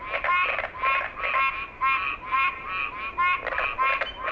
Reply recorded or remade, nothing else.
recorded